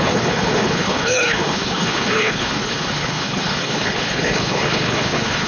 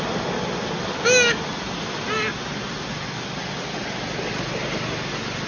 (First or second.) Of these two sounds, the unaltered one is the second